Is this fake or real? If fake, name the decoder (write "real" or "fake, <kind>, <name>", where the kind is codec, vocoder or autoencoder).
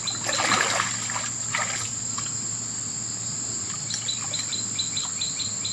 real